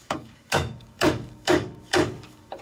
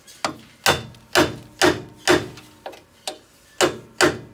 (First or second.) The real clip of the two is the second